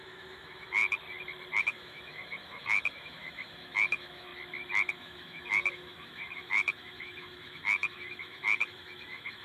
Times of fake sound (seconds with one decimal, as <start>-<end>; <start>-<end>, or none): 0.0-0.8; 1.6-4.3; 4.9-9.4